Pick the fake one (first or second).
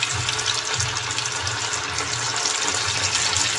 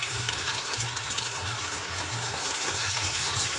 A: second